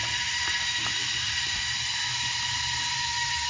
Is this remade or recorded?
recorded